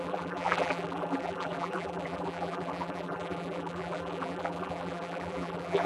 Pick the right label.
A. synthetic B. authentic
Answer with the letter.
A